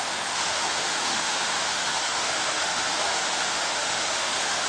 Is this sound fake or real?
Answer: fake